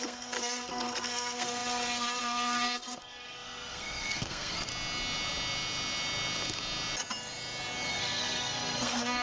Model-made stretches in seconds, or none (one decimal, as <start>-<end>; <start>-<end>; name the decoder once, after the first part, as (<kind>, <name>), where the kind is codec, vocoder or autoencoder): 0.0-4.7 (codec, SNAC); 7.9-9.2

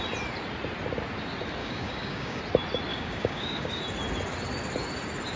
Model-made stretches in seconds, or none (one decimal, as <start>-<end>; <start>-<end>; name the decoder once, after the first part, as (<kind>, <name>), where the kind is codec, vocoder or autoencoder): 1.6-2.4 (codec, DAC); 2.9-3.8

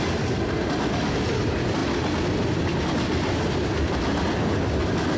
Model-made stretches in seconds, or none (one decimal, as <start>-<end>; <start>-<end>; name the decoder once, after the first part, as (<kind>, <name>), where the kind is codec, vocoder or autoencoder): none